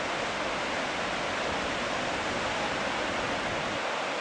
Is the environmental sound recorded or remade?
recorded